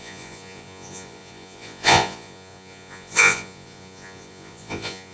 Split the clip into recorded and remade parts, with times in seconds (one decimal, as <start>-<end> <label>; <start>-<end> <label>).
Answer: 0.0-5.1 remade